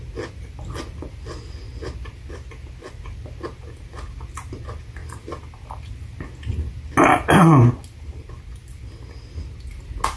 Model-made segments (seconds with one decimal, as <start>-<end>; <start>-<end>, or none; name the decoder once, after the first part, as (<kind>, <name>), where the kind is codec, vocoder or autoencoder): none